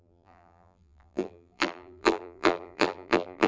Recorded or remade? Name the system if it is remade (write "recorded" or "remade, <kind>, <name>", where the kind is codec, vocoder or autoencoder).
remade, vocoder, BigVGAN v2